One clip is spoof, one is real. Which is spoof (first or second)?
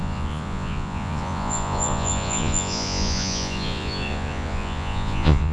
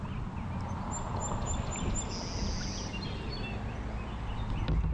first